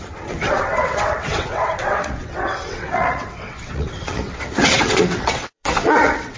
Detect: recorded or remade remade